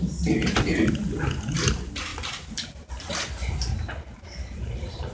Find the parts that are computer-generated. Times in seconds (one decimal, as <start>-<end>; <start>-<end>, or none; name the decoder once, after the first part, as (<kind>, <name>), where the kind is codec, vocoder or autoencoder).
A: none